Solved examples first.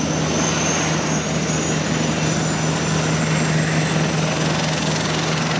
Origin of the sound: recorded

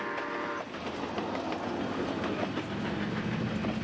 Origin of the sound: recorded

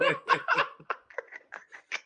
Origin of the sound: remade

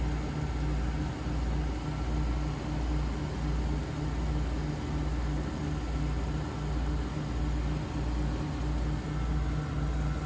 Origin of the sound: recorded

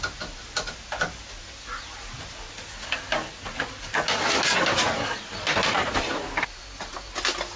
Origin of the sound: recorded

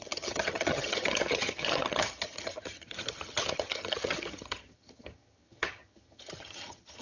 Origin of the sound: remade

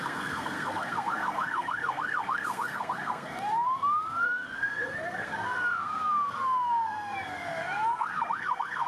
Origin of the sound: remade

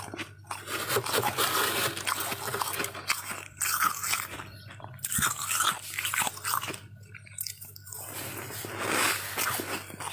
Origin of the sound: recorded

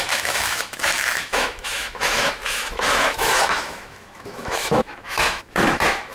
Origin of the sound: remade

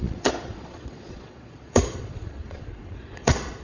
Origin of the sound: remade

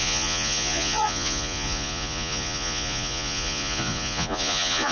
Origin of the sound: remade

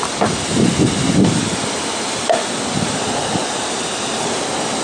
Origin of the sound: recorded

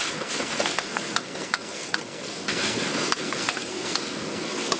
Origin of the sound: remade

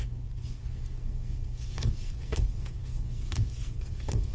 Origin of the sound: remade